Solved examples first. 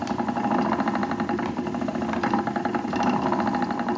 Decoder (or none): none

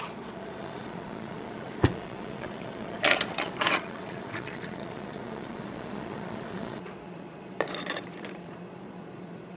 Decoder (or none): vocoder, Vocos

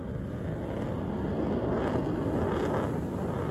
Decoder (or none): none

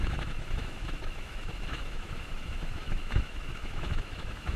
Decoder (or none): autoencoder, DAC-VAE